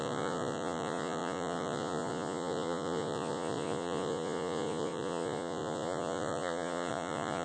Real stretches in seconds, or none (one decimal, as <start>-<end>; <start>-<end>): none